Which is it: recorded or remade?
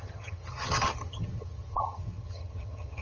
remade